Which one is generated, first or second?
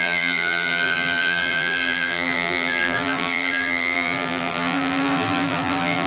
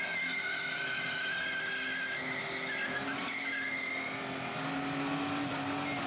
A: first